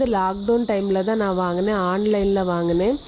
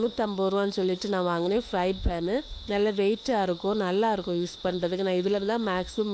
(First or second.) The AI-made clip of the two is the second